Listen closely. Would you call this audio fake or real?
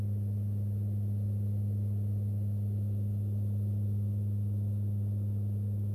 real